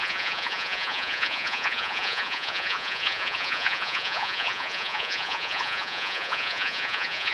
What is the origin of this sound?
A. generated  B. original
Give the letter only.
A